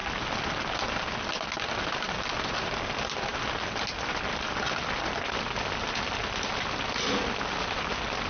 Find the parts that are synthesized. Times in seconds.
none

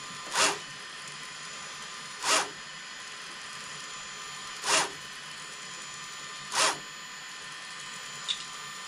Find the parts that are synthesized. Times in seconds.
0.7-3.9 (vocoder, BigVGAN v2); 4.4-5.3

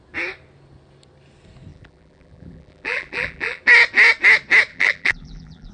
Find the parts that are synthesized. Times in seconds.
1.7-3.6 (vocoder, BigVGAN v2); 4.7-5.7

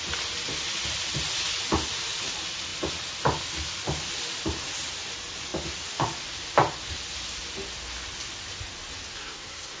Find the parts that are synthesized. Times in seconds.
9.2-9.8 (codec, SNAC)

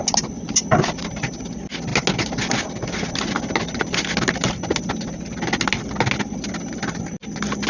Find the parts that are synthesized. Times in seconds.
none

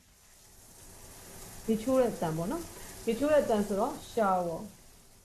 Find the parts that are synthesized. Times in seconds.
none